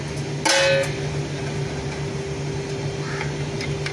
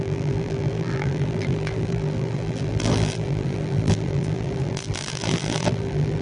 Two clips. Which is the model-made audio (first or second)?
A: second